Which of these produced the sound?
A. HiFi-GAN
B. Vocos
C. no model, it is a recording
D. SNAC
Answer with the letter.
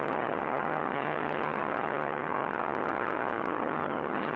A